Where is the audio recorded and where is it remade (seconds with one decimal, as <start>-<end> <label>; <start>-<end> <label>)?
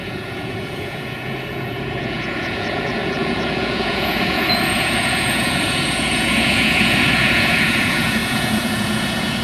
0.0-9.4 remade